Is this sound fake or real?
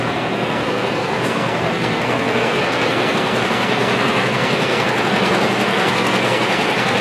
fake